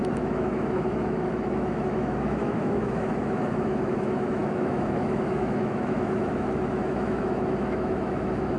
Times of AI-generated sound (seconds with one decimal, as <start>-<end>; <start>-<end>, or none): 0.0-8.6